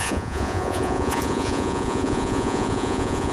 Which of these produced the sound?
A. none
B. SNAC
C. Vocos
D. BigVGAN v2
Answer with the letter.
C